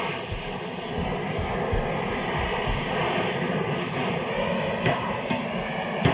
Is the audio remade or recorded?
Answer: recorded